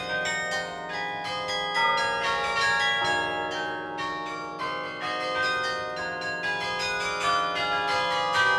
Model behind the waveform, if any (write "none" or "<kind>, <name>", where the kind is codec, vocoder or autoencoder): none